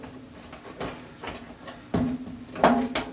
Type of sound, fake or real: real